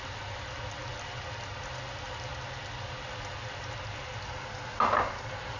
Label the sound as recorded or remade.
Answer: recorded